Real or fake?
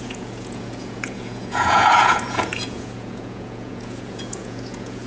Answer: fake